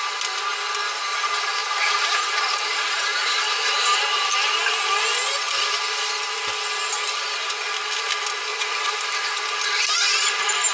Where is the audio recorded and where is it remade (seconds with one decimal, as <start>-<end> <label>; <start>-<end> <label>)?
0.0-1.6 recorded; 1.6-4.2 remade; 4.2-8.5 recorded; 8.5-9.4 remade; 9.4-10.7 recorded